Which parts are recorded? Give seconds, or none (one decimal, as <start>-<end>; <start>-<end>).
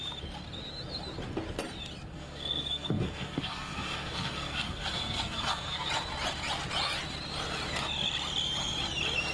0.0-2.1; 5.9-9.3